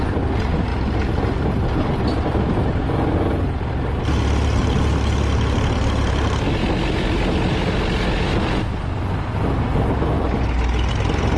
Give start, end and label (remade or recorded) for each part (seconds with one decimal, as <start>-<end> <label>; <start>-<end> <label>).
0.0-11.4 recorded